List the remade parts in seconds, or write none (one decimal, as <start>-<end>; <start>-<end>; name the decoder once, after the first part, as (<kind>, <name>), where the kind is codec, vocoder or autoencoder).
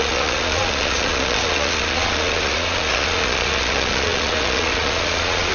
0.0-5.5 (vocoder, Vocos)